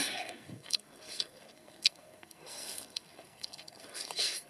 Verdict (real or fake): fake